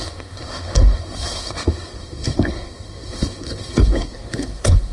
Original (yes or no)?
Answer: no